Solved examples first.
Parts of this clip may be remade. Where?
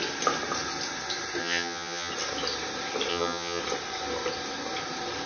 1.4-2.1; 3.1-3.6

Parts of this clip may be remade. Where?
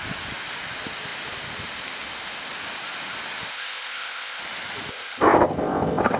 3.5-4.4; 4.9-6.2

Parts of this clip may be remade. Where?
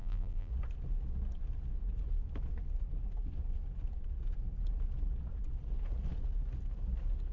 0.0-0.5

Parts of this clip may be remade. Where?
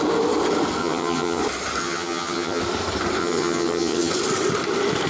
0.8-1.4; 1.8-2.6; 3.2-4.1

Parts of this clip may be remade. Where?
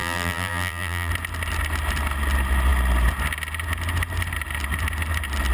0.0-1.1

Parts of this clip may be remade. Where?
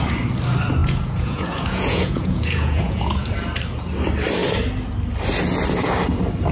0.8-3.3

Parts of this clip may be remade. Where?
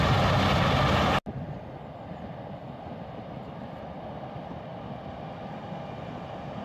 none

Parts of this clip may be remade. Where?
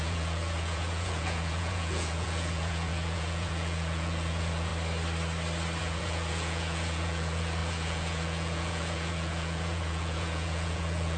0.0-4.7; 5.8-11.2